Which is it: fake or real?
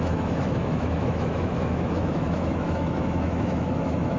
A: fake